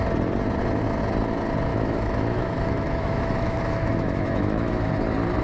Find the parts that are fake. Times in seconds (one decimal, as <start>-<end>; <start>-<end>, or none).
1.7-4.9